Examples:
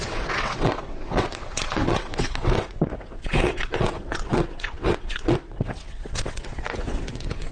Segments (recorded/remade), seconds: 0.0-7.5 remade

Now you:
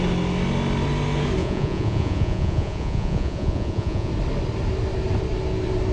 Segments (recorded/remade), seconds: 0.0-1.4 recorded; 1.4-4.1 remade; 4.1-5.9 recorded

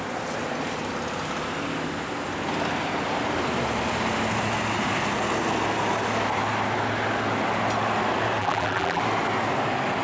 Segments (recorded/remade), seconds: 0.0-8.4 recorded; 8.4-9.0 remade; 9.0-10.0 recorded

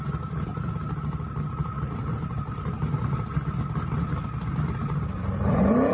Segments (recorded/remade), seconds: 0.0-5.9 recorded

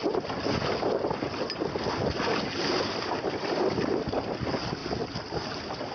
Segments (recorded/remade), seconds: 0.0-5.9 recorded